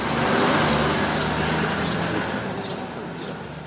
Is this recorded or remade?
recorded